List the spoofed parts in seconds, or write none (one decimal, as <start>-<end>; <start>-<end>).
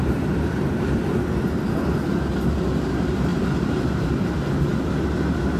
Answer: 0.0-1.0; 3.3-4.1